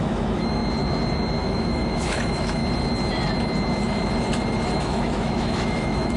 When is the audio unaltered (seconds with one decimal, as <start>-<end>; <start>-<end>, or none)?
0.6-1.4; 2.6-4.8